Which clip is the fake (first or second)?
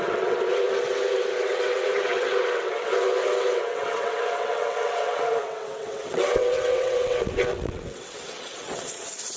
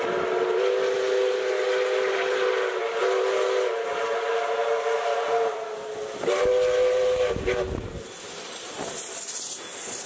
first